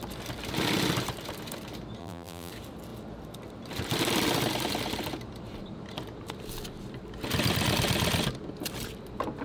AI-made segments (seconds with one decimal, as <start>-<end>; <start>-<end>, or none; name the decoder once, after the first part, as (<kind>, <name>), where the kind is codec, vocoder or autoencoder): 2.0-2.5 (vocoder, BigVGAN v2)